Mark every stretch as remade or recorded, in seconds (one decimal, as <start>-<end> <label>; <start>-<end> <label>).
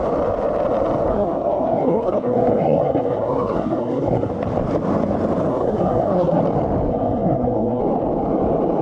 0.0-1.1 recorded; 1.1-4.3 remade; 4.3-5.5 recorded; 5.5-6.4 remade; 6.4-6.9 recorded; 6.9-7.8 remade; 7.8-8.8 recorded